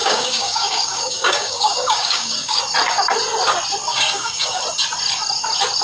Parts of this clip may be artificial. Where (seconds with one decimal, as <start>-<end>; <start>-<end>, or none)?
0.0-2.6; 3.9-4.6